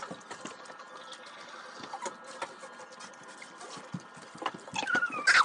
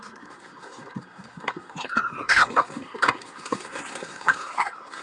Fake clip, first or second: second